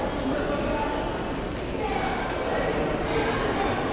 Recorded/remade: recorded